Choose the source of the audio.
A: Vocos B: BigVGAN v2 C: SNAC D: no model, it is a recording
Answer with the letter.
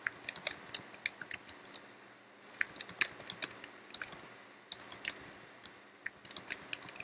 D